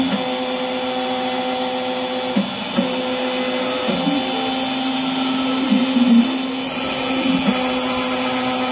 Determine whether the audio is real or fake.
real